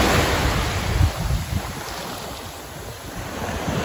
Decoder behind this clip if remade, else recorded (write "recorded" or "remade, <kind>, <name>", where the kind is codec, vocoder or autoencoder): recorded